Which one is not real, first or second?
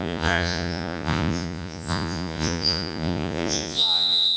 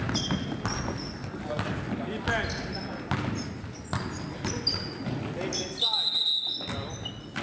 first